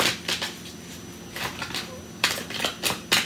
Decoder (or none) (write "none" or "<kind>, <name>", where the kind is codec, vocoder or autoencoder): none